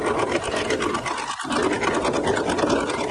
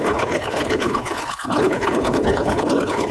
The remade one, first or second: second